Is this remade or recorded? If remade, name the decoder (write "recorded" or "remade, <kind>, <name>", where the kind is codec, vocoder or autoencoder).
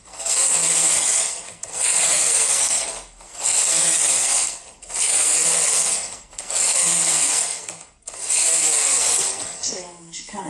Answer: remade, codec, SNAC